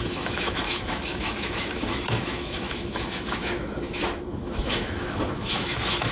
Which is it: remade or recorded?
remade